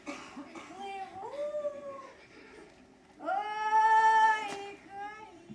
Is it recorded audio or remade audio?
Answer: recorded